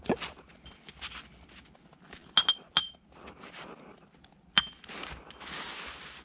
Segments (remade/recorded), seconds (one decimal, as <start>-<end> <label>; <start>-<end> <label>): 0.0-6.2 recorded